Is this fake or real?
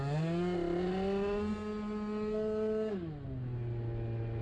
real